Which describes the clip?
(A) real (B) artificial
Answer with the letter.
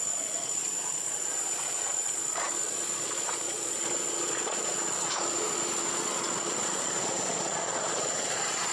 B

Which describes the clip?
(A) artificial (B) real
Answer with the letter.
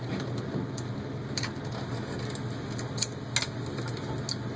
B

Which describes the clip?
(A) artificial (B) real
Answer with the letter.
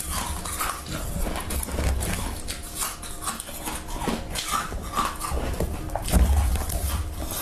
B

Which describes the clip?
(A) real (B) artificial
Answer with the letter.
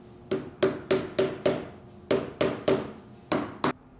A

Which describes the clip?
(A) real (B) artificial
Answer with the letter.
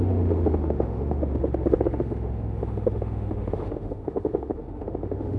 B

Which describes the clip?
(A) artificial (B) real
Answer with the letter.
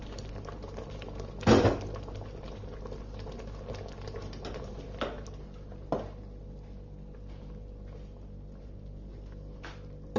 B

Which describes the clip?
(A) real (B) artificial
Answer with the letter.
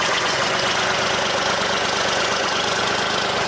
B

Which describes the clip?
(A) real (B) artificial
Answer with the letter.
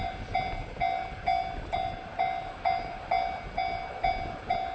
A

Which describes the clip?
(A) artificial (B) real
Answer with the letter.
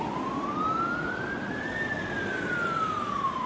B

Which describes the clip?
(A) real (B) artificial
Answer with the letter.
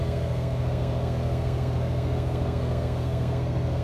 B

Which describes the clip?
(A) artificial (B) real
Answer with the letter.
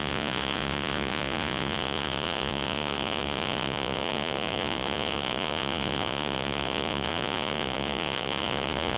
A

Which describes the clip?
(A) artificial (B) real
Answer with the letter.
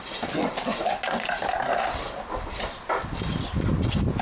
B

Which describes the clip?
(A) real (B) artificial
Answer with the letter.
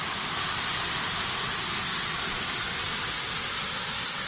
A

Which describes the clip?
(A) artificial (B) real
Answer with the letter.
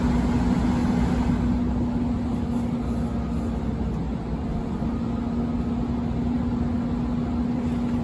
B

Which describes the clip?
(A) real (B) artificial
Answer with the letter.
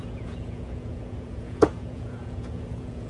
B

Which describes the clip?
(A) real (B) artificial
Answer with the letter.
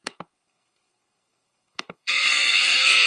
B